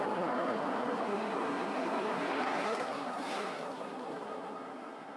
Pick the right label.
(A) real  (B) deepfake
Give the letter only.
B